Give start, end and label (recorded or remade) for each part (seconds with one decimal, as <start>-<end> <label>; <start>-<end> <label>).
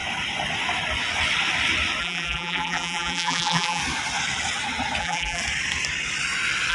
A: 0.0-2.0 recorded; 2.0-3.8 remade; 3.8-5.0 recorded; 5.0-5.4 remade; 5.4-6.7 recorded